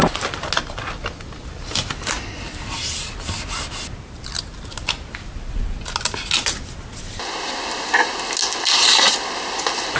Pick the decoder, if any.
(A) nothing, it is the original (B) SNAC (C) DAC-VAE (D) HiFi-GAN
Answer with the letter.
A